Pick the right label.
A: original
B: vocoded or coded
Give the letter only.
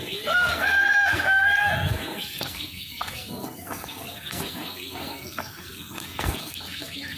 B